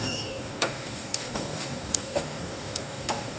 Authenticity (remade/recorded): remade